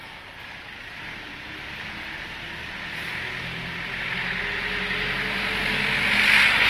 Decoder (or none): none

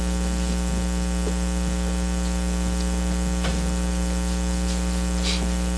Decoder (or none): none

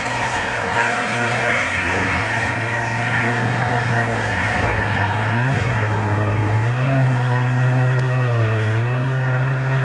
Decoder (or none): codec, SNAC